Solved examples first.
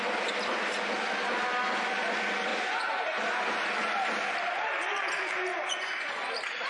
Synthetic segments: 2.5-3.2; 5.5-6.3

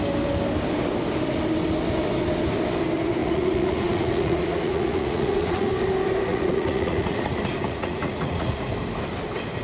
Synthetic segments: 3.2-5.7; 6.3-8.7

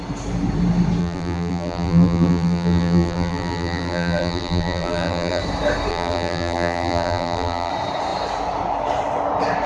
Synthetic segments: 1.0-5.4; 5.9-7.7

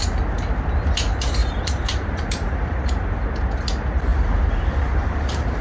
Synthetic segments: 1.4-3.3; 4.1-5.6